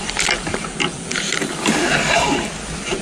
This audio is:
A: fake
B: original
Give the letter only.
B